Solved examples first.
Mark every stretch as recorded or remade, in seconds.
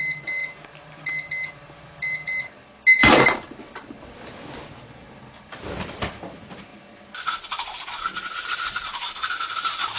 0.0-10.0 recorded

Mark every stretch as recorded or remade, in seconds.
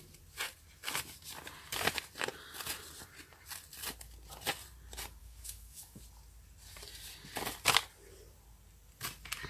0.0-5.2 recorded; 5.2-6.0 remade; 6.0-9.5 recorded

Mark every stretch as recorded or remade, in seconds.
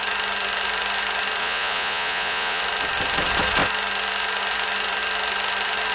0.0-1.4 recorded; 1.4-2.6 remade; 2.6-5.9 recorded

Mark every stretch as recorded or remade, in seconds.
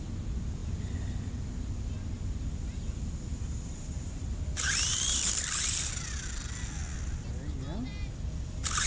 0.0-3.3 recorded; 3.3-5.9 remade; 5.9-8.9 recorded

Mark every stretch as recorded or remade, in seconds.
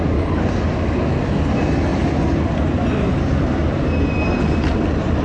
0.0-5.2 recorded